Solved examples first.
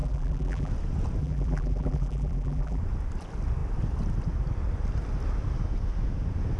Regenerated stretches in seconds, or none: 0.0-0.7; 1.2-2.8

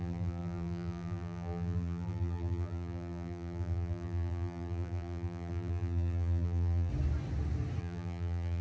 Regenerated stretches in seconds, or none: 0.0-6.9; 7.8-8.6